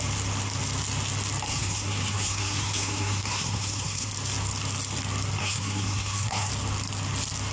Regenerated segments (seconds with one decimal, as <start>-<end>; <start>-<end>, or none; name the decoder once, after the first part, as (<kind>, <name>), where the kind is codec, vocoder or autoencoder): 1.5-4.1 (codec, SNAC); 5.4-6.5

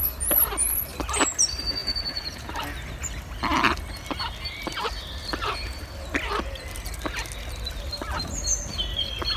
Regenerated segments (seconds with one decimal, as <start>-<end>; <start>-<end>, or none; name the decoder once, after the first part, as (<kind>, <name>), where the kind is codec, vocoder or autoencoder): 1.8-2.5 (vocoder, Vocos)